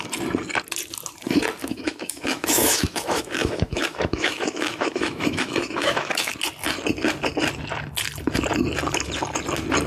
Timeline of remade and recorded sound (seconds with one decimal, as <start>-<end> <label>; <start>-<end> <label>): 0.0-1.6 recorded; 1.6-6.3 remade; 6.3-9.9 recorded